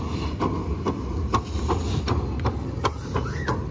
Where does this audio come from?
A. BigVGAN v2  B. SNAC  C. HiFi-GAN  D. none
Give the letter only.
D